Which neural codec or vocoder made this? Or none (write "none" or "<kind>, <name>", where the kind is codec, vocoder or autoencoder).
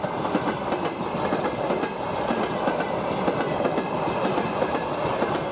none